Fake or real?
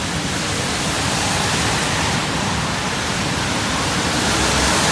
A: real